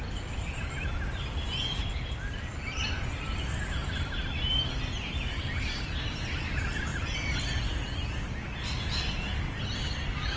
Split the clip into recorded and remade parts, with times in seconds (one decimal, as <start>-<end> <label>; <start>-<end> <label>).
0.0-10.4 recorded